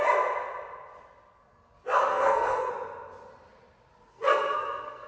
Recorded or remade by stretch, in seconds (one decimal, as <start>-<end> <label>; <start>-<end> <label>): 0.0-2.1 recorded; 2.1-2.7 remade; 2.7-4.1 recorded; 4.1-5.1 remade